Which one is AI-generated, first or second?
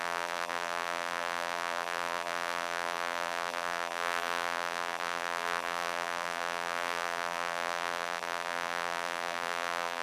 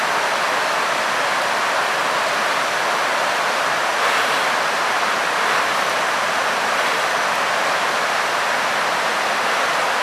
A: first